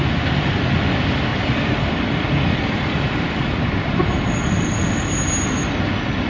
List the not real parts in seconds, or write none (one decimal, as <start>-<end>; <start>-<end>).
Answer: 1.3-4.9